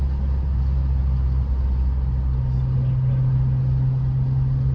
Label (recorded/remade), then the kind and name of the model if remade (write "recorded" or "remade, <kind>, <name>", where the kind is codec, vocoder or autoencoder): recorded